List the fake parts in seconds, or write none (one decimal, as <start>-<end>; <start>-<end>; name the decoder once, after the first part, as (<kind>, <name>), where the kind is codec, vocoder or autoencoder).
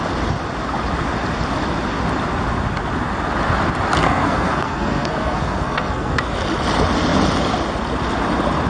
4.0-6.3 (codec, SNAC)